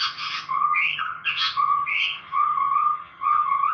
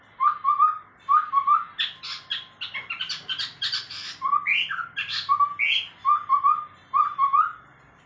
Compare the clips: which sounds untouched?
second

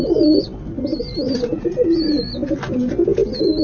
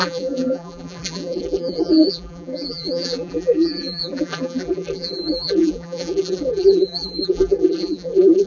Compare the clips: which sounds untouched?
first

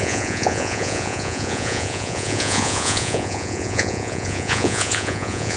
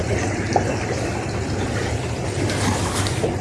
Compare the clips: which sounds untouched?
second